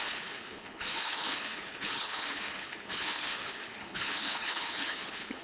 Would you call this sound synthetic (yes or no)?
yes